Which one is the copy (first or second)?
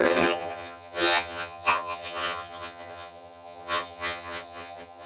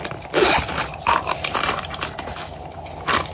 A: first